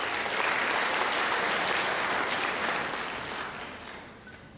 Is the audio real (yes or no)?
yes